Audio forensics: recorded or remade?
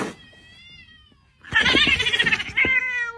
recorded